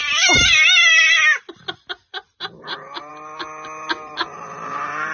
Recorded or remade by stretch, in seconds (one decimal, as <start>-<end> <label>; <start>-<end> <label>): 0.0-5.1 recorded